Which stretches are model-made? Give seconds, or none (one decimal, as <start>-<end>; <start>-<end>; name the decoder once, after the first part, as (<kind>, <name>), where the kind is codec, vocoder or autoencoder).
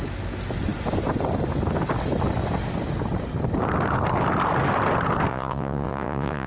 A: 5.3-6.5 (vocoder, Vocos)